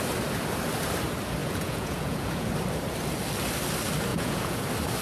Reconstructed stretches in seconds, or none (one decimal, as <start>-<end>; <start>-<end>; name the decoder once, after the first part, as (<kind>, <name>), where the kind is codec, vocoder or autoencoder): 1.4-2.5 (vocoder, Vocos); 4.1-4.6